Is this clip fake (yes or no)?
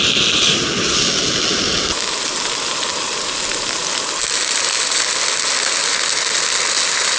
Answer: no